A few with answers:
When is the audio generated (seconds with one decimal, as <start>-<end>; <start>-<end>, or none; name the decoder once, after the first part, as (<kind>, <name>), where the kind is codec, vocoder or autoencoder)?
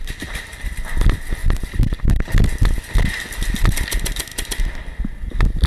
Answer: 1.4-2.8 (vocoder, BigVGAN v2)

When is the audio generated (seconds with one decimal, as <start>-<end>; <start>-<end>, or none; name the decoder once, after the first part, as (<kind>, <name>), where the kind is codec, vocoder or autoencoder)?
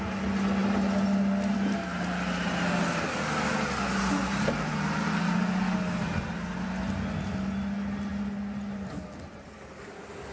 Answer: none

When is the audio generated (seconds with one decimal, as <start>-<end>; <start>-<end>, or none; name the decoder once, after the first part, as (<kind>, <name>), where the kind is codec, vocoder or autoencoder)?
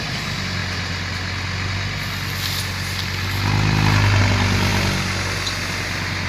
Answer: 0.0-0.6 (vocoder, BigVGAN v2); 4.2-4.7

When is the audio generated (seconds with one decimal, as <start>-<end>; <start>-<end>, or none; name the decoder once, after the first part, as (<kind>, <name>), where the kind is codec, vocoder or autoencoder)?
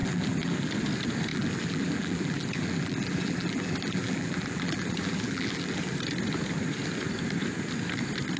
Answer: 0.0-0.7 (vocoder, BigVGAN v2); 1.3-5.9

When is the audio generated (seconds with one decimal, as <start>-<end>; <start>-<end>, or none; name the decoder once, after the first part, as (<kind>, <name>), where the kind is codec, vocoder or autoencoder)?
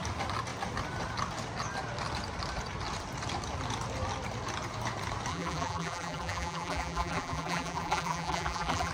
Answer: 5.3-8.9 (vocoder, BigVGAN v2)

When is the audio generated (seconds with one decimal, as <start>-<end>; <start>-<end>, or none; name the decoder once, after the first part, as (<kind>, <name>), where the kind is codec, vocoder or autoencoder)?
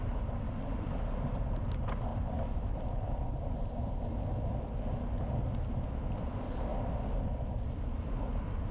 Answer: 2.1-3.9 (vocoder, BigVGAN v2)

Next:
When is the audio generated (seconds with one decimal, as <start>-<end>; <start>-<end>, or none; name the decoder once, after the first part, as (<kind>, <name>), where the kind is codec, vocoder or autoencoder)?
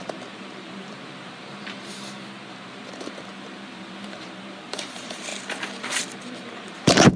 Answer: 0.0-5.3 (vocoder, BigVGAN v2); 6.2-7.2